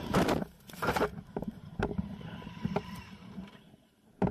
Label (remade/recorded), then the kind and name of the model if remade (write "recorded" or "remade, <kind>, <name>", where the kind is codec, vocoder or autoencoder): remade, vocoder, BigVGAN v2